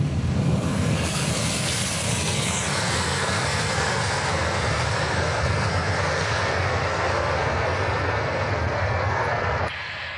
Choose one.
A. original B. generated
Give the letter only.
B